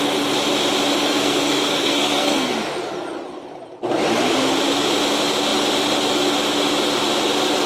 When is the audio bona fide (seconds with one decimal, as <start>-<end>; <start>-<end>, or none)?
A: 0.0-1.0; 2.5-7.7